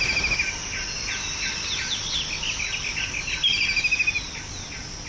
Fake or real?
real